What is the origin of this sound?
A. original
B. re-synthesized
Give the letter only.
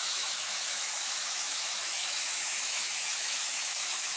B